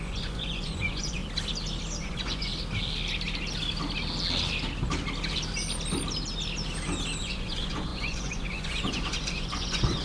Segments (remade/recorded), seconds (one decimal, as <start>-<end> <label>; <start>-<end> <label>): 0.0-1.2 remade; 1.2-2.0 recorded; 2.0-2.5 remade; 2.5-7.2 recorded; 7.2-10.0 remade